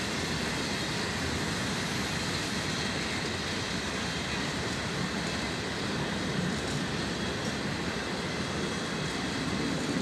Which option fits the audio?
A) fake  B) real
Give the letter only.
B